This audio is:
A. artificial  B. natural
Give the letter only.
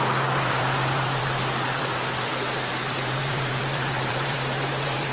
A